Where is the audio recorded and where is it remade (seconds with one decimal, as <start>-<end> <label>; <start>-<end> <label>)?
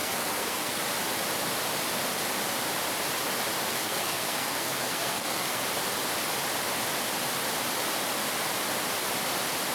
0.0-0.8 remade; 0.8-3.7 recorded; 3.7-5.6 remade; 5.6-9.7 recorded